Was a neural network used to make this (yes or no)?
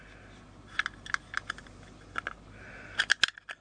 no